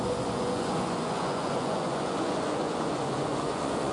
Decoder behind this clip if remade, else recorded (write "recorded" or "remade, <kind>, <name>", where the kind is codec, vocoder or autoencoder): remade, vocoder, Vocos